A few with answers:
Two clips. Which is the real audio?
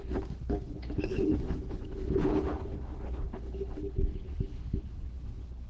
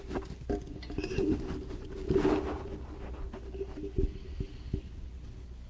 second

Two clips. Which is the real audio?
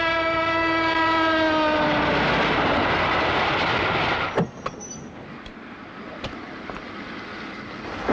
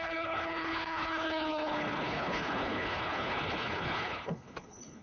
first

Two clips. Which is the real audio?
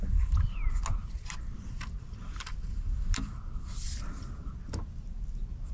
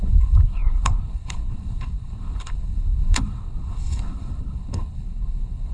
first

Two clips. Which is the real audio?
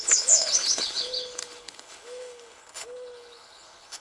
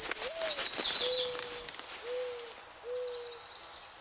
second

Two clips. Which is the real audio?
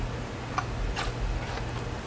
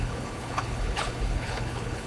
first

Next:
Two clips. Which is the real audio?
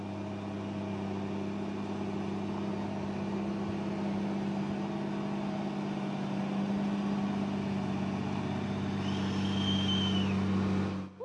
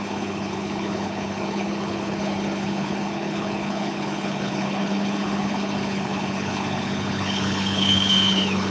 first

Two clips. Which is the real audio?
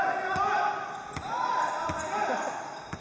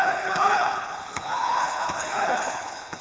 first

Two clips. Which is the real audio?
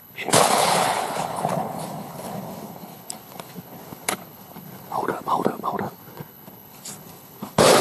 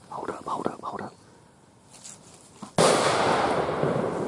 second